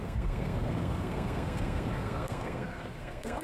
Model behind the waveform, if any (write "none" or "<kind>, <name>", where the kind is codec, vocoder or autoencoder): codec, SNAC